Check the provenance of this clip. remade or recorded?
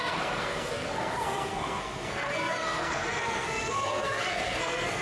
remade